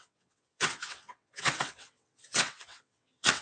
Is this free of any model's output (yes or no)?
no